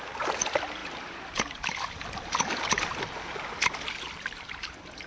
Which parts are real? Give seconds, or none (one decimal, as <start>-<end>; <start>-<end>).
0.0-5.1